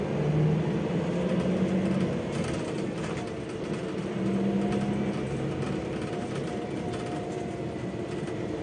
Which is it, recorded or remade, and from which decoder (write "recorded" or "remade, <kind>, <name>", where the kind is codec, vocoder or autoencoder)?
recorded